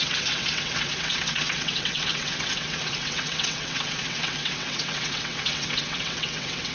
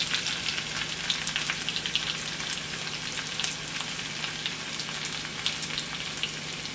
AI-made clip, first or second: first